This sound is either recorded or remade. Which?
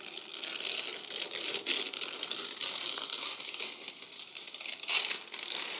recorded